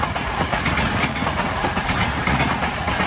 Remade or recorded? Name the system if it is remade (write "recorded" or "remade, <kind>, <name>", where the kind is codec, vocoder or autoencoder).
remade, vocoder, Vocos